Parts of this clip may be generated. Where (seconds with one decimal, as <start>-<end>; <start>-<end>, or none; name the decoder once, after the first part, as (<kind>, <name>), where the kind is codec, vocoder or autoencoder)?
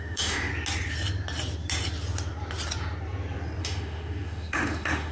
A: 0.0-0.5 (autoencoder, DAC-VAE); 3.6-5.1